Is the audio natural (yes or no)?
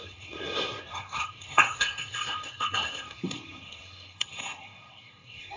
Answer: no